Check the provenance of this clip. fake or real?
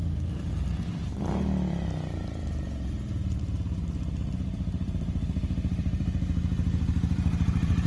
fake